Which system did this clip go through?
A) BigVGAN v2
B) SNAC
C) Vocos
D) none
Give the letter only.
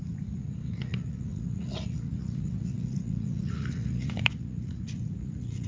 C